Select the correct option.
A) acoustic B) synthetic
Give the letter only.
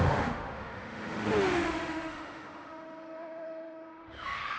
B